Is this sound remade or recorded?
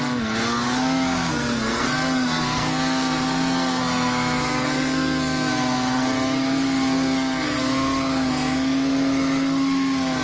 remade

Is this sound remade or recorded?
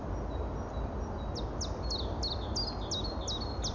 recorded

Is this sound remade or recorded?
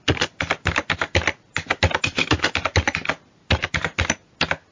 recorded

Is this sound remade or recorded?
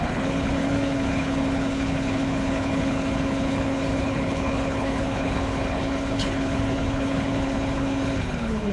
remade